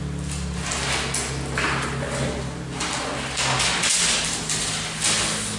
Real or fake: real